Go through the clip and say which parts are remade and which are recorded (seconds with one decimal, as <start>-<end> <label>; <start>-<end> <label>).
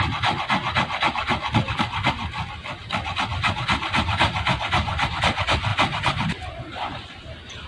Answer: 0.0-3.3 recorded; 3.3-5.2 remade; 5.2-5.7 recorded; 5.7-7.7 remade